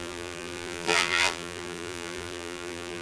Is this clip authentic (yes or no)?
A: no